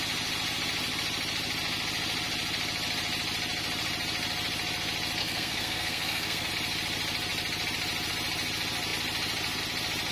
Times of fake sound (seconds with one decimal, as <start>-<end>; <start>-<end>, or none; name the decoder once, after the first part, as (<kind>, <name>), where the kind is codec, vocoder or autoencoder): 5.2-6.5 (codec, SNAC)